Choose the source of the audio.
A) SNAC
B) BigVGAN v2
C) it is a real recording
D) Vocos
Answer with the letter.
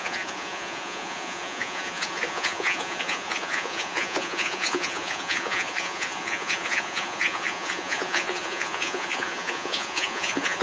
D